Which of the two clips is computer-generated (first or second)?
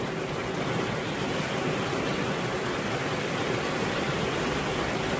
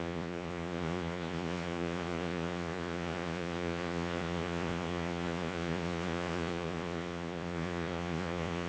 second